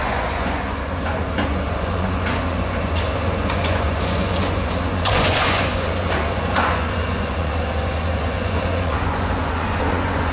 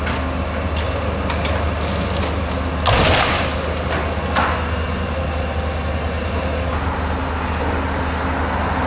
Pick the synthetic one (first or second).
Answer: first